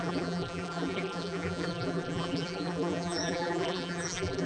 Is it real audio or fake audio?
fake